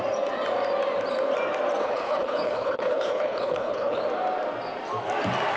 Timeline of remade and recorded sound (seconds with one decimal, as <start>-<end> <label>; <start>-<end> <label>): 0.0-1.8 recorded; 1.8-4.0 remade; 4.0-5.6 recorded